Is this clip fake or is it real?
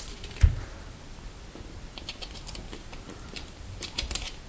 real